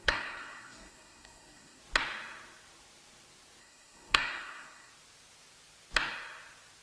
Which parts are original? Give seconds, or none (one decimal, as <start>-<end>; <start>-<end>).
1.8-3.6; 4.9-6.8